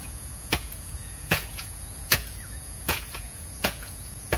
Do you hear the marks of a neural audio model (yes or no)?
yes